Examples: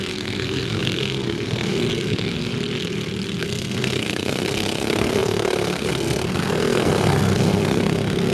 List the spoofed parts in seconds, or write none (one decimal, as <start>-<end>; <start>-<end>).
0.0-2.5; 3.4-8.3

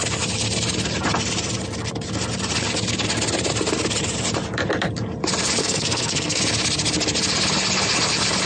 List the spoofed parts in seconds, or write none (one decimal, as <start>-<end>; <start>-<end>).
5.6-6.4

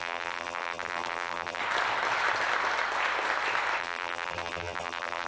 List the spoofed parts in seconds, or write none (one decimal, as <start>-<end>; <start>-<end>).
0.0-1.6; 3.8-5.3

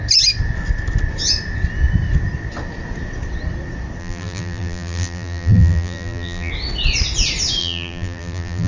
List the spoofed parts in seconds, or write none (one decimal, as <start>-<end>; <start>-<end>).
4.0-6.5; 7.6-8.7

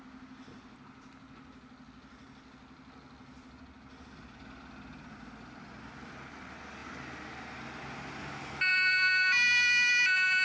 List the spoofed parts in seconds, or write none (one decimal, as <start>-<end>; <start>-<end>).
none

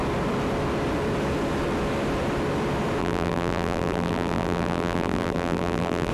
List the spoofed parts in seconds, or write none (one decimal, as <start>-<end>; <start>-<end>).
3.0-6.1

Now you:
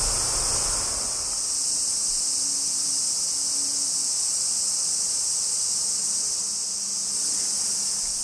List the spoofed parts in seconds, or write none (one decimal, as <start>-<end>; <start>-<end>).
none

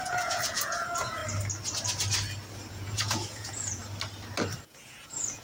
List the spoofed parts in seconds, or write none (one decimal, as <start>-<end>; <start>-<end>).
0.0-1.2; 2.7-3.8; 4.7-5.4